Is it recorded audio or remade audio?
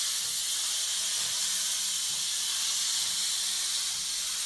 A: recorded